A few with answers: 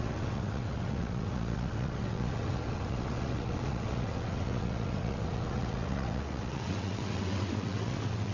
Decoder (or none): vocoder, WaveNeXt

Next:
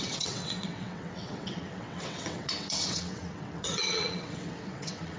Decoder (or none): vocoder, WaveNeXt